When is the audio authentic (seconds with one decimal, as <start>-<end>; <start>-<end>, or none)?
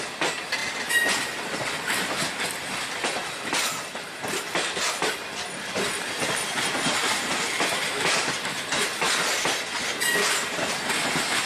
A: 0.0-11.5